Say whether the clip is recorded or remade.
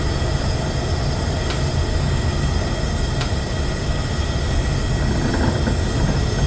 recorded